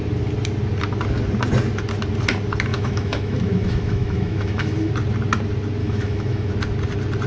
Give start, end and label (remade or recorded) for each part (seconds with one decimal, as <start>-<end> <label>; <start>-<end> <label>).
0.0-2.7 recorded; 2.7-4.9 remade; 4.9-5.8 recorded; 5.8-6.5 remade; 6.5-7.3 recorded